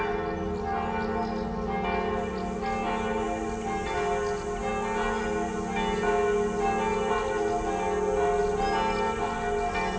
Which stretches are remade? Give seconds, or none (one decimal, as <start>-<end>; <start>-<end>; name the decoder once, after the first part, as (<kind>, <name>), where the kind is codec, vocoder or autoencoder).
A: none